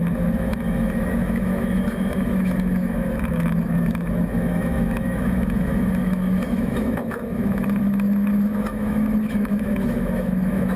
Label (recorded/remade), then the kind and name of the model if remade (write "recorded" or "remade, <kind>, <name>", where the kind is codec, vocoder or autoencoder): remade, autoencoder, DAC-VAE